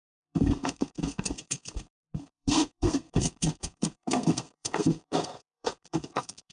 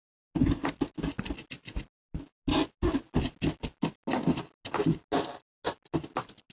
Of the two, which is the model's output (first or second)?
first